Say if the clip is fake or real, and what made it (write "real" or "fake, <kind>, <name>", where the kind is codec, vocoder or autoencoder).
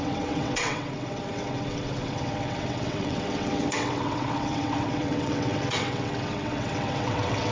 fake, vocoder, WaveNeXt